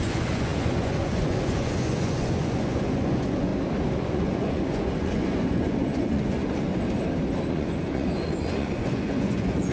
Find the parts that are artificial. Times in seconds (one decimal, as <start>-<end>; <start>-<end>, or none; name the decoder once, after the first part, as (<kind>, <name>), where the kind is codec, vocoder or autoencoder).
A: 0.0-3.5 (vocoder, Vocos); 4.0-6.7; 7.5-9.7